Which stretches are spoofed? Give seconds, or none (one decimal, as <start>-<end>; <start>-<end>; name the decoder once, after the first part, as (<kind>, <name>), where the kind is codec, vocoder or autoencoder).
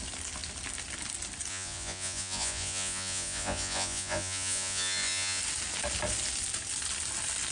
1.5-5.4 (vocoder, Vocos)